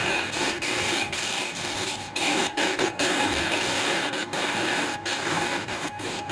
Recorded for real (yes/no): no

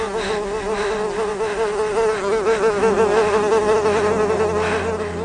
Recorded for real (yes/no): yes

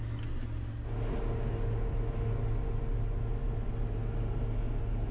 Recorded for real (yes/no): yes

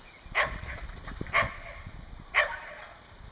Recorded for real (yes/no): no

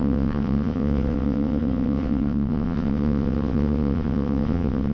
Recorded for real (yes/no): no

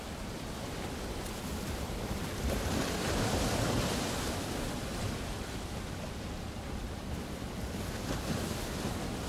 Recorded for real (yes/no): yes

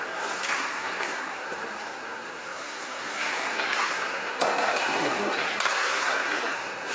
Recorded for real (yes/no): no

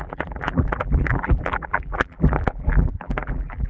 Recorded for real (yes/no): no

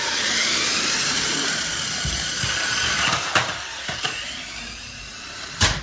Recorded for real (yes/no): no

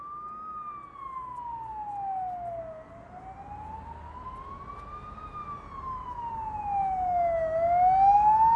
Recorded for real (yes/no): yes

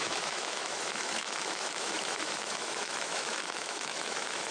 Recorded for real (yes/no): no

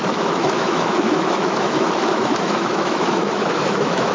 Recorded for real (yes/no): no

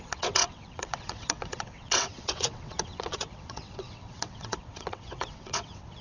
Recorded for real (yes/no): no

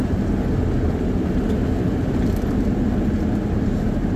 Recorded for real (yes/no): yes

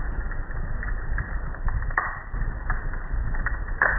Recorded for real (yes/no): yes